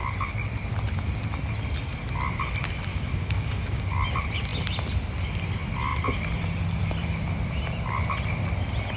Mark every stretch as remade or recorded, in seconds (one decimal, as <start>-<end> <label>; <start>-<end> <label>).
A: 0.0-2.9 recorded; 2.9-3.8 remade; 3.8-9.0 recorded